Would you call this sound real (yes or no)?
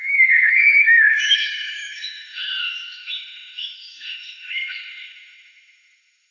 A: no